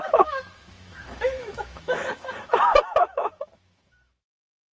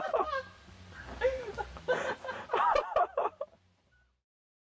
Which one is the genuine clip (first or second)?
second